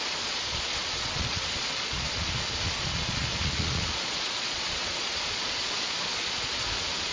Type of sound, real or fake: fake